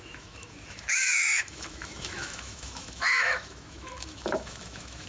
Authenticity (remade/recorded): remade